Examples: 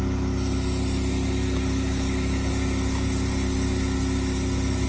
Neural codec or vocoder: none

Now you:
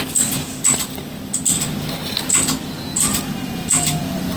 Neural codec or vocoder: none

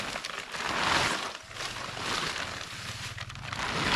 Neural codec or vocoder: none